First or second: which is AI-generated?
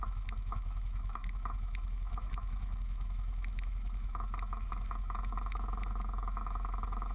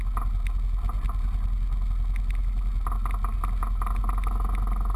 first